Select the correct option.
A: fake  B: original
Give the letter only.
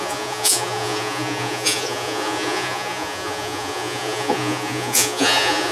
A